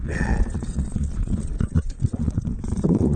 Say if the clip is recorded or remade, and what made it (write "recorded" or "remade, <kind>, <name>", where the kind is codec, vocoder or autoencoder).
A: remade, vocoder, Vocos